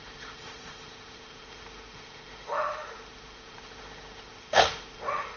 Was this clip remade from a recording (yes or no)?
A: yes